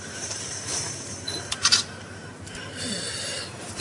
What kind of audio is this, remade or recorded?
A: remade